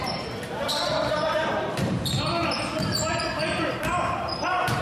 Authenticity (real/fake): fake